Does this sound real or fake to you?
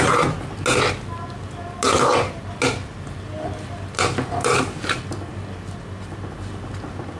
real